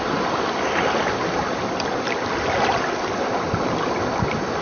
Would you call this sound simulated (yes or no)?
no